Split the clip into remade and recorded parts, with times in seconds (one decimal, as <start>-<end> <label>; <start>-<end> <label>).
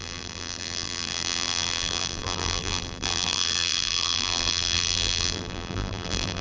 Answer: 0.0-6.4 remade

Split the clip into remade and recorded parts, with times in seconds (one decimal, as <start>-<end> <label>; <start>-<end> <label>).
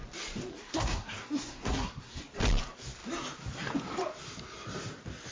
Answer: 0.0-0.5 recorded; 0.5-2.2 remade; 2.2-5.3 recorded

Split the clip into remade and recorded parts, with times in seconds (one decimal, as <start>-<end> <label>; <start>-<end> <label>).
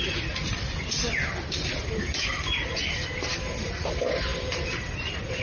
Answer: 0.0-5.4 recorded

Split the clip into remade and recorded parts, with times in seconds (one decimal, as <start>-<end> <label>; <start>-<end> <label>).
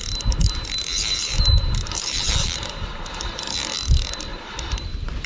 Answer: 0.0-0.9 recorded; 0.9-3.4 remade; 3.4-4.3 recorded; 4.3-5.3 remade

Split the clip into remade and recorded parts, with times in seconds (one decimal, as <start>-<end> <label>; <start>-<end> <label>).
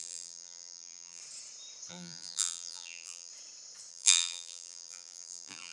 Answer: 0.0-1.2 remade; 1.2-1.9 recorded; 1.9-3.3 remade; 3.3-3.9 recorded; 3.9-5.7 remade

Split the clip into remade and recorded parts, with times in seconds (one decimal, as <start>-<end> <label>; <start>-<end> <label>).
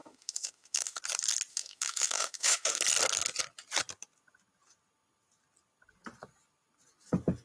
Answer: 0.0-1.0 remade; 1.0-1.5 recorded; 1.5-2.8 remade; 2.8-7.4 recorded